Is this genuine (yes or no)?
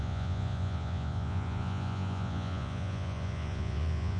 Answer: no